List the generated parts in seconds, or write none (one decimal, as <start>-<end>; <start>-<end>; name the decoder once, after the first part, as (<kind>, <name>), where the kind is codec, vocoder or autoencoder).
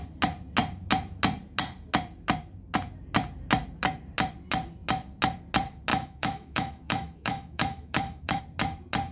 5.9-8.4 (autoencoder, DAC-VAE)